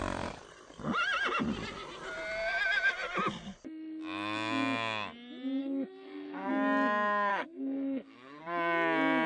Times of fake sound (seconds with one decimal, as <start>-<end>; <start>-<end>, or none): 5.6-6.5; 7.3-8.4